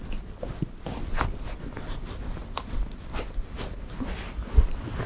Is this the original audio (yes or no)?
yes